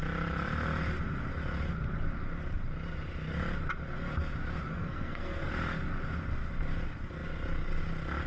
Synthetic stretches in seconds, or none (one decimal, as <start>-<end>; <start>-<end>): 4.7-5.5